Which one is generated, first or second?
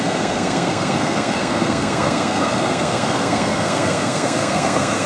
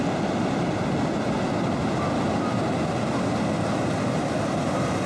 first